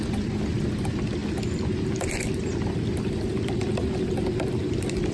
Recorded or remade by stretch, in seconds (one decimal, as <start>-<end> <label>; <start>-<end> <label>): 0.0-5.1 recorded